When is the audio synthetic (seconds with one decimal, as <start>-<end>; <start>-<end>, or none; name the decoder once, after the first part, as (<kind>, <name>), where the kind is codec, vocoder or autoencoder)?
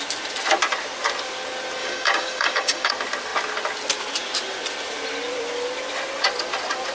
1.8-2.9 (codec, DAC)